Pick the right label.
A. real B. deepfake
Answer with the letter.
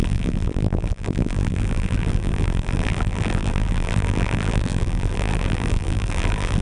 B